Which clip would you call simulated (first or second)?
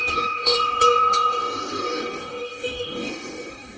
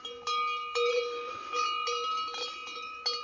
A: first